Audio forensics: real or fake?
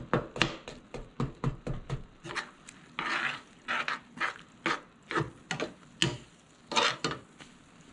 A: real